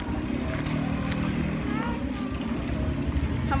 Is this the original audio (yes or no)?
yes